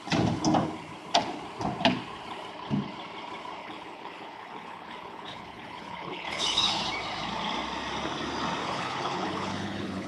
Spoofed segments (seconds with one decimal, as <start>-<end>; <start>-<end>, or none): 3.6-6.8; 8.6-10.1